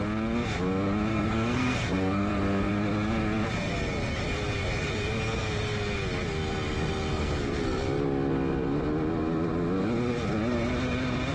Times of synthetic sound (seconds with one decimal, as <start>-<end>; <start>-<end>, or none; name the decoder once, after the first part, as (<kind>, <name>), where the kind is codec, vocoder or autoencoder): 1.1-2.7 (codec, SNAC); 7.1-7.6